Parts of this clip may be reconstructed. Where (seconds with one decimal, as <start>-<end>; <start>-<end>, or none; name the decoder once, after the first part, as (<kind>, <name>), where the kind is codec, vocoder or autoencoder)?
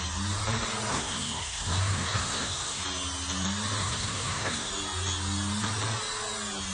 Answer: 0.9-2.8 (codec, SNAC); 3.8-4.7